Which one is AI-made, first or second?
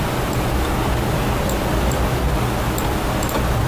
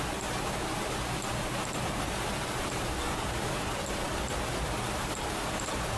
second